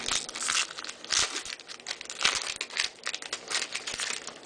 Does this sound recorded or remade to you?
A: recorded